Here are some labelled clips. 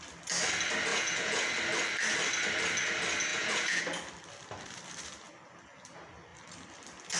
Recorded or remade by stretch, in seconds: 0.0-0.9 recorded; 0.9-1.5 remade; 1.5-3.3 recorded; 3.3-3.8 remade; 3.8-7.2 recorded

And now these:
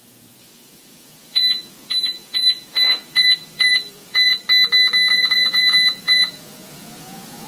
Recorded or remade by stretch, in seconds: 0.0-4.3 remade; 4.3-5.1 recorded; 5.1-7.5 remade

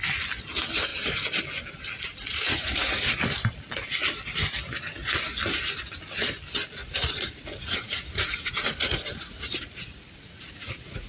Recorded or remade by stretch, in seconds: 0.0-2.3 recorded; 2.3-3.1 remade; 3.1-6.8 recorded; 6.8-11.1 remade